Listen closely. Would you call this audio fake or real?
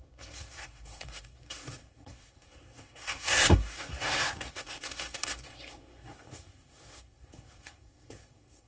fake